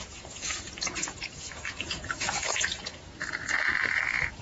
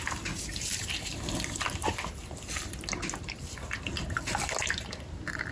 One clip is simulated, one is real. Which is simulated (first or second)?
first